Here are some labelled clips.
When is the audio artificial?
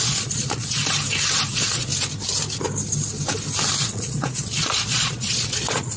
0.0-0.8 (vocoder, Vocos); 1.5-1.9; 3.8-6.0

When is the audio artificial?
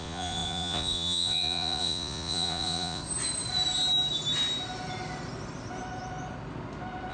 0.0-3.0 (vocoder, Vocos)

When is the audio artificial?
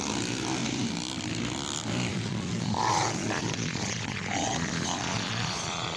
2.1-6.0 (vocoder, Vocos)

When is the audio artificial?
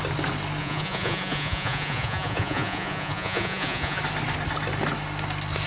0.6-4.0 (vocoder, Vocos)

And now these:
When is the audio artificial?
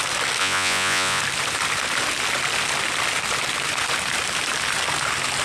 0.4-1.2 (vocoder, Vocos)